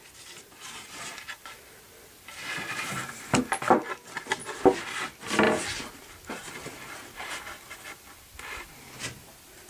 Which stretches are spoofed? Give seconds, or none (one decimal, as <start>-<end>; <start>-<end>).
none